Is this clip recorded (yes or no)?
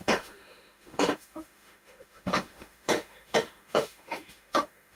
no